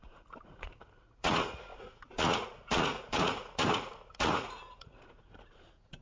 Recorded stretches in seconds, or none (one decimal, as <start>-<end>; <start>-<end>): none